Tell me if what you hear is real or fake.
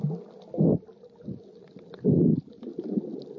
real